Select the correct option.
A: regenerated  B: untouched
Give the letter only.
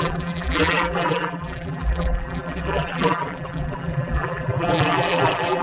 A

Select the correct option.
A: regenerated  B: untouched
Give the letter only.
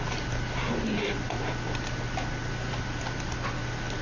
B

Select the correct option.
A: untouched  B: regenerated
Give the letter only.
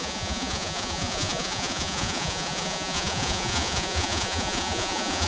B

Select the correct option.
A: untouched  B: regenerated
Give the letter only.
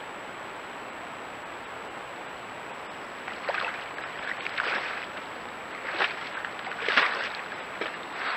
A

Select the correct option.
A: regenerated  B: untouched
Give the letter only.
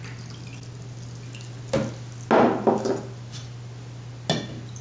B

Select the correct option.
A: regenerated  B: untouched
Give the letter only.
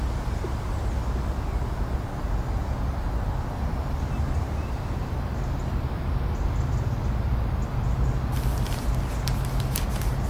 B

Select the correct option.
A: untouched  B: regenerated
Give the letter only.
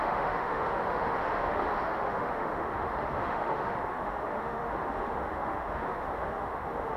B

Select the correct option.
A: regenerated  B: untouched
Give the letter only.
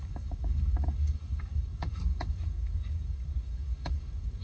A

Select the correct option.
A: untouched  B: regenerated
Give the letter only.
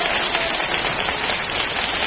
A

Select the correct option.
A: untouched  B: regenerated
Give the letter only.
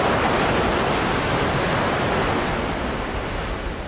A